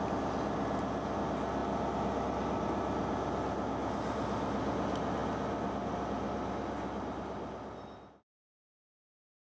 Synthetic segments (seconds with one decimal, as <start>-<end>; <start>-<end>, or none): none